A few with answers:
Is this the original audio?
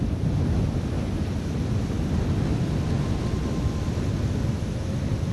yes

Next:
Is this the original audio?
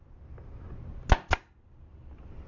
yes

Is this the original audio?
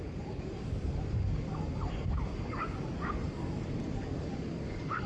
no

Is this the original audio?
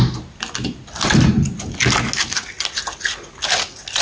yes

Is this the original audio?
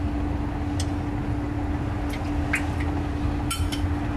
yes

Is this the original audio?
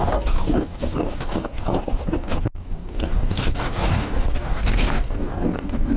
no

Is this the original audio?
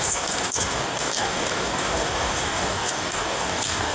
no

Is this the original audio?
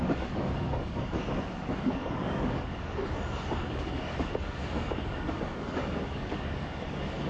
no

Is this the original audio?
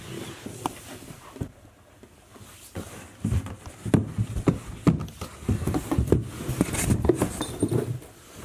yes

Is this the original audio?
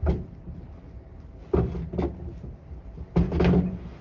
yes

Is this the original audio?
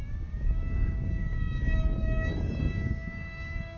no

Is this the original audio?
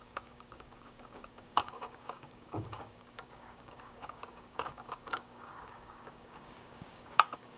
no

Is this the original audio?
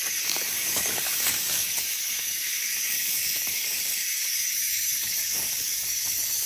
no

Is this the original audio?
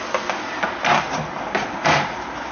yes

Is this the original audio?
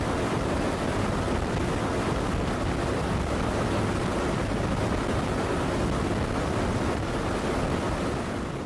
yes